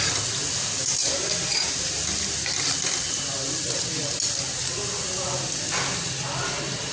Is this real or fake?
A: real